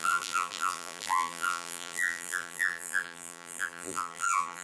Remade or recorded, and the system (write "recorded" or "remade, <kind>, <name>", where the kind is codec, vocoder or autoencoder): remade, vocoder, BigVGAN v2